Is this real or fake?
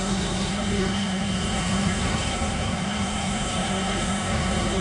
fake